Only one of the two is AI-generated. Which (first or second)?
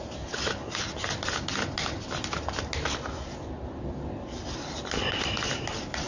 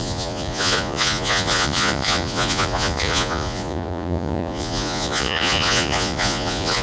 second